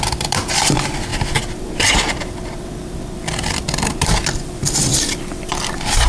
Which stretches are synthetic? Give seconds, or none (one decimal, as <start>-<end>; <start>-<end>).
0.0-6.1

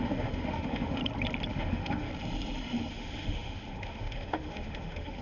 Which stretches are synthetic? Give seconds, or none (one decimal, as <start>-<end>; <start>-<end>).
0.0-1.0; 1.5-2.1; 2.9-5.2